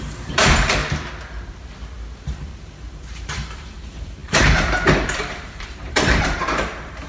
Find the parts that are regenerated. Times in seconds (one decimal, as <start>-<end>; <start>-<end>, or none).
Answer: 0.0-0.8; 2.2-7.1